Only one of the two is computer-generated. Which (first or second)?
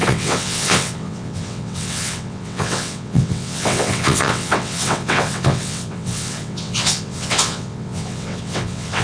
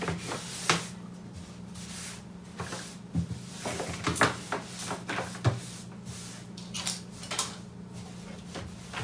first